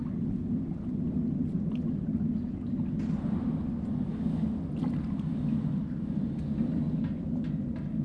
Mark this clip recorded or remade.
recorded